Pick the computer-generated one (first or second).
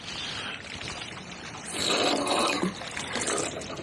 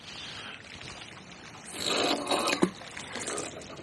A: first